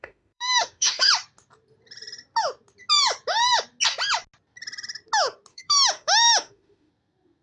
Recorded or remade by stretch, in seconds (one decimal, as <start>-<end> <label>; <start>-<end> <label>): 0.0-1.1 remade; 1.1-5.5 recorded; 5.5-6.9 remade; 6.9-7.4 recorded